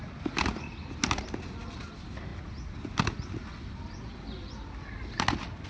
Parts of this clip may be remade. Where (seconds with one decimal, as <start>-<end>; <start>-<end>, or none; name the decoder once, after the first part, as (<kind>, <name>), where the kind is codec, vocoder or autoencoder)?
none